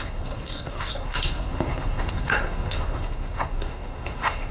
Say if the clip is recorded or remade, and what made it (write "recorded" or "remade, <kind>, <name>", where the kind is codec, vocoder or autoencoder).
remade, codec, SNAC